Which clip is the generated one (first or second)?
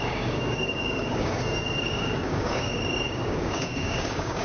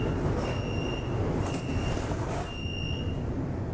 first